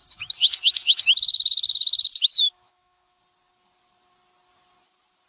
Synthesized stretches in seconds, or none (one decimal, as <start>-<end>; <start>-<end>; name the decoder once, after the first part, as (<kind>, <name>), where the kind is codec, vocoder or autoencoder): 0.0-3.2 (autoencoder, DAC-VAE)